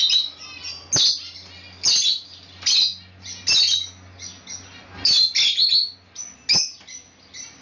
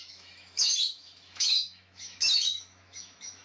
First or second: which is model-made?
second